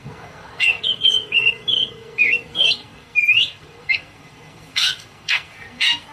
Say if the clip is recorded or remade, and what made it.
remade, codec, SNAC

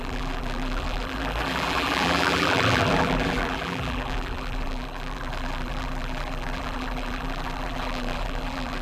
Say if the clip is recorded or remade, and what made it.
remade, vocoder, BigVGAN v2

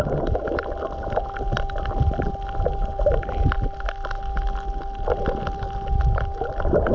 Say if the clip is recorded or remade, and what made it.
recorded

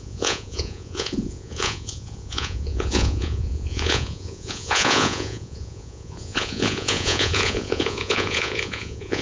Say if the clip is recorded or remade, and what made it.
remade, vocoder, Vocos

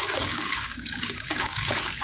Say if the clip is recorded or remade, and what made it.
remade, codec, DAC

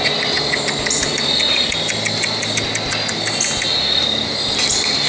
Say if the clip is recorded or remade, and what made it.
recorded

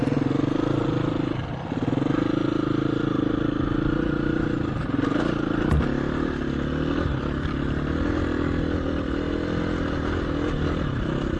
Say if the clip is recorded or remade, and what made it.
recorded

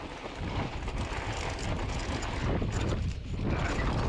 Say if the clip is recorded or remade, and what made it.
recorded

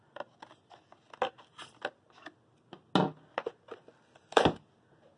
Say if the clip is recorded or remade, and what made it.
recorded